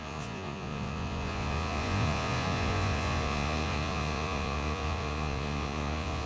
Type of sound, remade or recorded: remade